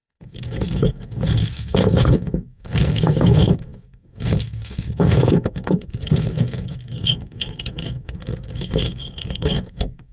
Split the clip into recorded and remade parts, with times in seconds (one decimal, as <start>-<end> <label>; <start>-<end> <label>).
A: 0.0-10.1 remade